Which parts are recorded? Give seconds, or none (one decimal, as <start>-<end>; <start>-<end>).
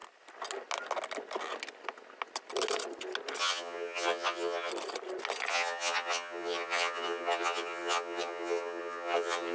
0.0-3.4; 4.7-5.5